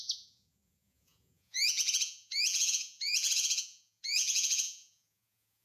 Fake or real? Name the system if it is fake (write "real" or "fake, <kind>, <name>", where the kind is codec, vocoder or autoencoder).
fake, vocoder, Vocos